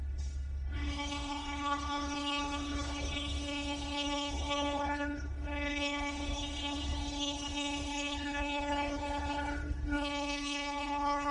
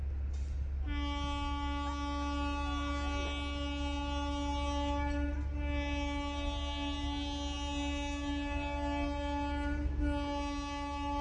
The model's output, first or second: first